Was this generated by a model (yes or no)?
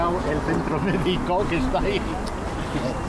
no